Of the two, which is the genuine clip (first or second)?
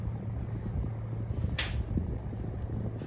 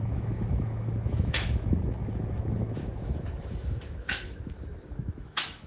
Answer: first